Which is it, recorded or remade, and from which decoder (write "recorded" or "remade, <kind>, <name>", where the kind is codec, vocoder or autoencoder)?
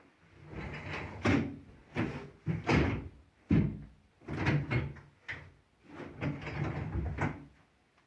recorded